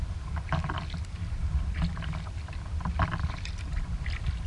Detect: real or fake real